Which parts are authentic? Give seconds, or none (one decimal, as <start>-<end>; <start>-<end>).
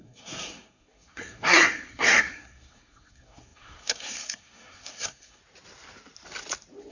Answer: 5.4-6.9